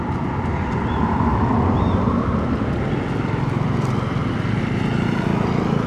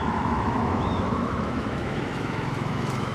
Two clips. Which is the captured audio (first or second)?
first